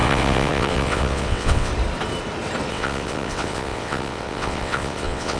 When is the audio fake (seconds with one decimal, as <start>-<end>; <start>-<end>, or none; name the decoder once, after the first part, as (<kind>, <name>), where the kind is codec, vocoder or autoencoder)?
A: 0.0-1.7 (vocoder, WaveNeXt); 2.7-5.4